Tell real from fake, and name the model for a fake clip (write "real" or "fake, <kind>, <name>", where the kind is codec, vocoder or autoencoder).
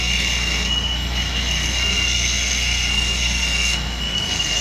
fake, codec, SNAC